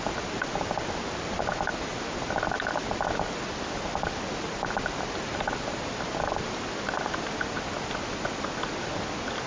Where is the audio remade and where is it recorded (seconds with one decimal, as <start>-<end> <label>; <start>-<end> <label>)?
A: 0.0-9.5 recorded